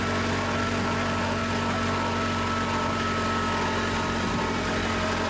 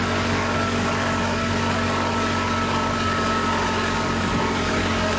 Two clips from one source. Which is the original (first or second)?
first